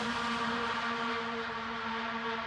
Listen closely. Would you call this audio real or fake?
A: fake